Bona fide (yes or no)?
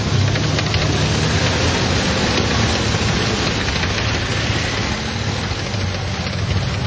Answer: yes